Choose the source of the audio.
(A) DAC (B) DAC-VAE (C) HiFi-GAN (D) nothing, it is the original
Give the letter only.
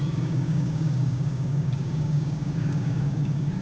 A